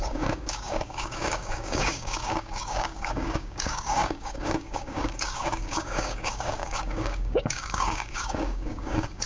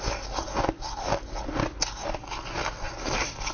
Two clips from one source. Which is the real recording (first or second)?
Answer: second